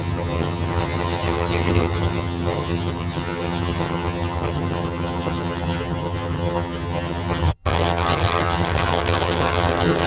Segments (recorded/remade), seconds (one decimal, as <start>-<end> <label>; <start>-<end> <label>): 0.0-10.1 remade